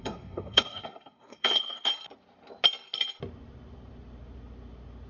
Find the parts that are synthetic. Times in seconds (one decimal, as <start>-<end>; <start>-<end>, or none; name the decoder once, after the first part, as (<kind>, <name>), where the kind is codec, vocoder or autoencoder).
0.0-1.9 (codec, SNAC)